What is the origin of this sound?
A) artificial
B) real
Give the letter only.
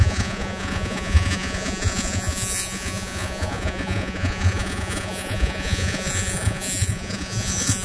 A